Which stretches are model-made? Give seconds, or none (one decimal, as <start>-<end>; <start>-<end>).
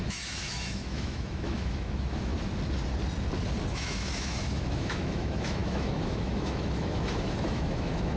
0.0-2.3; 3.7-8.2